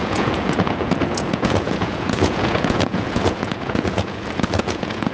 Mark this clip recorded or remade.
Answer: remade